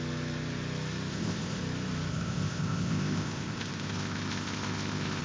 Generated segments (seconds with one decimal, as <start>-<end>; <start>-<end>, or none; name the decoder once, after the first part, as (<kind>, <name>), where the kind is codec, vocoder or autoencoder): 1.1-1.6 (codec, ZipCodec); 2.1-5.2